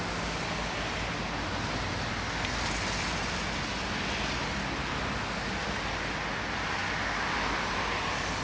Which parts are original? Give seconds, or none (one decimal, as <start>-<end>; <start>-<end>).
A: 0.0-8.4